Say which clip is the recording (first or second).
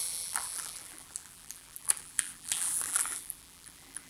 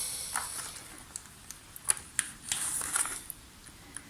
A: second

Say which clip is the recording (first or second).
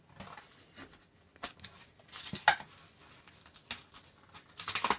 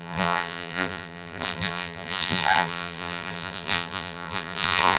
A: first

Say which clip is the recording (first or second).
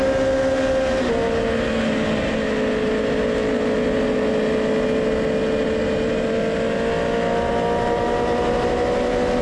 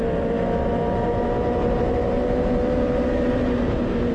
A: first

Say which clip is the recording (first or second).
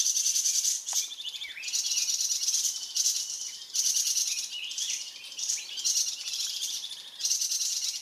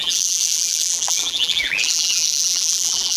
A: first